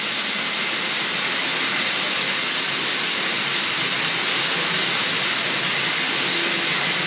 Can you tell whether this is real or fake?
real